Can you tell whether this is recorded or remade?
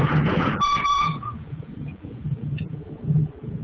remade